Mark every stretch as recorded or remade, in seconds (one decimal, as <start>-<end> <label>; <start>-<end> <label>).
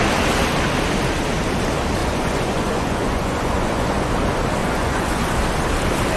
0.0-2.0 recorded; 2.0-4.1 remade; 4.1-4.6 recorded; 4.6-5.3 remade; 5.3-6.2 recorded